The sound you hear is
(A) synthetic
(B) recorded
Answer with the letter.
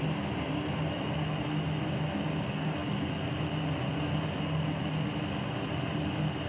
B